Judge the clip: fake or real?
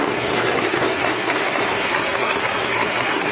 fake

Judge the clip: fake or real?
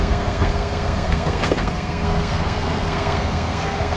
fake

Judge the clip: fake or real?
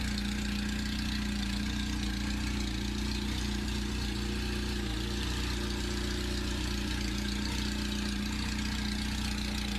real